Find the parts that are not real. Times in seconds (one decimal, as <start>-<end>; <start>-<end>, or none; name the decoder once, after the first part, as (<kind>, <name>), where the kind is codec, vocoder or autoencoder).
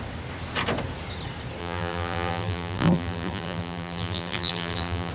1.6-5.1 (vocoder, BigVGAN v2)